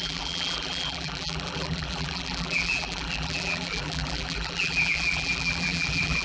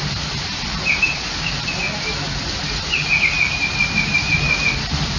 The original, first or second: second